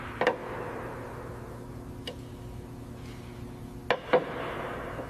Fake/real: real